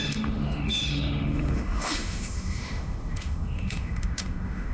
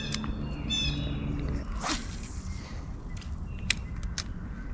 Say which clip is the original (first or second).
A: second